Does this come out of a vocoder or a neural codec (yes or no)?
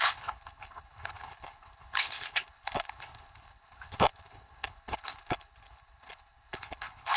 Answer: yes